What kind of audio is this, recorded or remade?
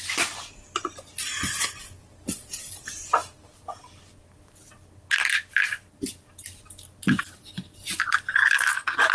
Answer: recorded